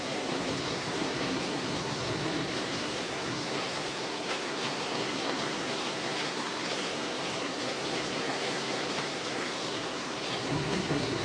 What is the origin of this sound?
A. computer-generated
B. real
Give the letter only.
A